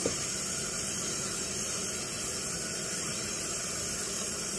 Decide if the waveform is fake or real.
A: real